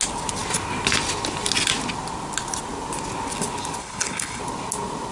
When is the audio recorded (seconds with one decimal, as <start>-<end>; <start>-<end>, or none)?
0.0-3.8; 4.4-5.1